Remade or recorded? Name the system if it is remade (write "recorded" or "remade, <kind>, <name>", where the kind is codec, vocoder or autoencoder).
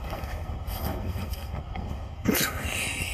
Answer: remade, codec, SNAC